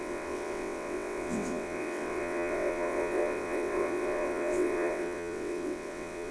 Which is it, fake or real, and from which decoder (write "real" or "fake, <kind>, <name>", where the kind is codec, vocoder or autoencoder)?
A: fake, vocoder, WaveNeXt